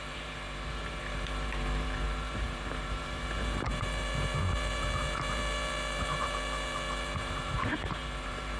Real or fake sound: fake